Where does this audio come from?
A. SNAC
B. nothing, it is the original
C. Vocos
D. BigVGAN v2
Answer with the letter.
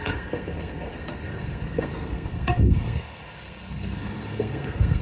A